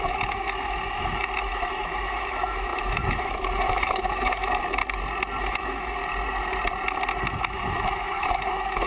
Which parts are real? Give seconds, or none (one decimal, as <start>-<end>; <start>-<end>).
4.8-5.4; 6.0-7.4